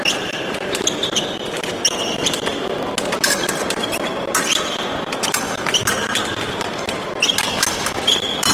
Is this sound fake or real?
real